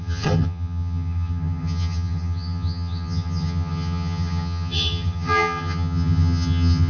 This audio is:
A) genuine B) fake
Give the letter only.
B